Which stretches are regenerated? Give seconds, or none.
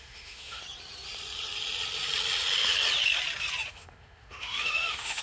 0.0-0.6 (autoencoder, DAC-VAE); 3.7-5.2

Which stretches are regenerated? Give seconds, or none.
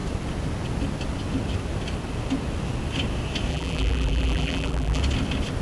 3.5-5.0 (vocoder, BigVGAN v2)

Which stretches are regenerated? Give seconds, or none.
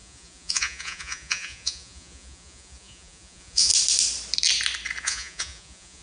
0.0-3.7 (vocoder, Vocos); 5.0-6.0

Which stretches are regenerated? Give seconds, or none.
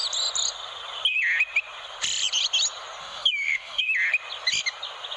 3.0-3.8 (autoencoder, DAC-VAE)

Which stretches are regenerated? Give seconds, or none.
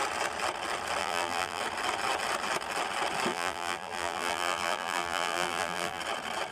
1.0-1.6 (vocoder, BigVGAN v2); 3.3-6.0